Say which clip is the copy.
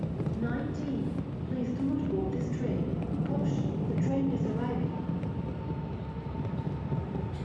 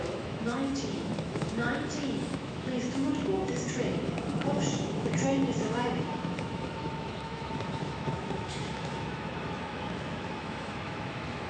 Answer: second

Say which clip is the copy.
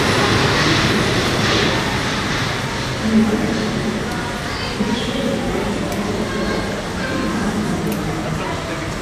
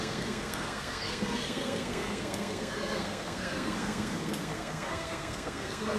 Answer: second